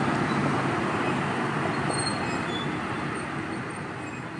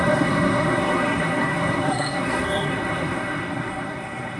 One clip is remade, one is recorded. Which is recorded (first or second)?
first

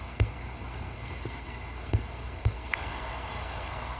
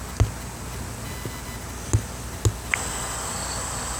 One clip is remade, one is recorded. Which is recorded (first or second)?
second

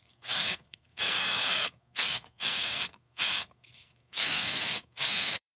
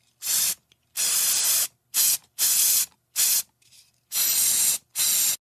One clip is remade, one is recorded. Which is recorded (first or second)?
second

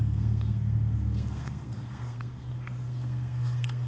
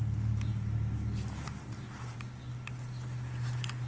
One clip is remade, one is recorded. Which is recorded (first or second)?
second